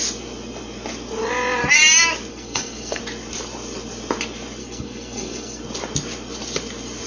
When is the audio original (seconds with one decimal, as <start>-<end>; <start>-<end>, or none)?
0.0-2.3; 3.0-4.6; 5.6-7.1